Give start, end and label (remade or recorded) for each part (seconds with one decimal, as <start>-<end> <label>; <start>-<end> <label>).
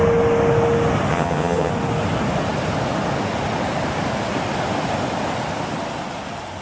0.0-1.1 recorded; 1.1-1.7 remade; 1.7-6.6 recorded